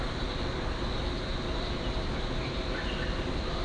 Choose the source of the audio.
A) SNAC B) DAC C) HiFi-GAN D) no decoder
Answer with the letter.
D